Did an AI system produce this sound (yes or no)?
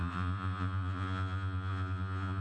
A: yes